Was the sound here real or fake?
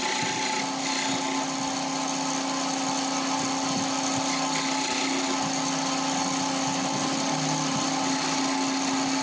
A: real